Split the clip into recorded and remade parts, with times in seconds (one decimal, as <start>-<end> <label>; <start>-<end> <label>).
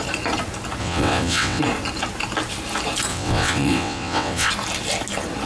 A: 0.0-0.8 recorded; 0.8-1.6 remade; 1.6-3.1 recorded; 3.1-4.5 remade; 4.5-5.5 recorded